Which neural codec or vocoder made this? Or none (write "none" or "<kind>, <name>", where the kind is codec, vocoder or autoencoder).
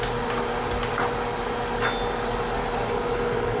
none